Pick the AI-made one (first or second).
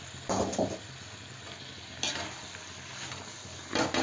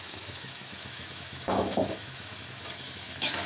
second